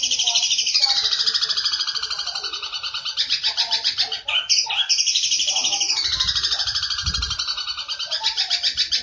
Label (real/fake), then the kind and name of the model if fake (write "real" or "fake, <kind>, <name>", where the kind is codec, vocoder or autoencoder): real